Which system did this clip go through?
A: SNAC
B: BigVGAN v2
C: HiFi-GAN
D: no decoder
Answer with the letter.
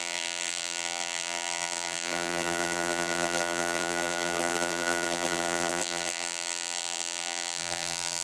B